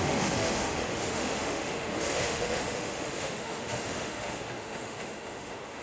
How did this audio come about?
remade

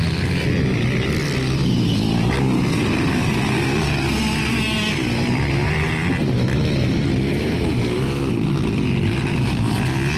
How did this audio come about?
recorded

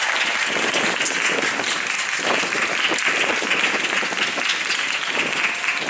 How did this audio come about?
recorded